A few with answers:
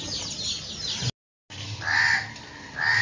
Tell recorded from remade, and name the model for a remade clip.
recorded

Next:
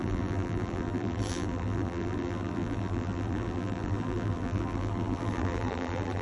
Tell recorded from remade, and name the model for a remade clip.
remade, vocoder, BigVGAN v2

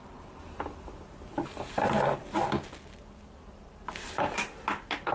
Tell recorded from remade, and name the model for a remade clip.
recorded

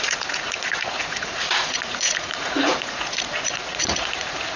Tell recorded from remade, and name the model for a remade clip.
remade, vocoder, Vocos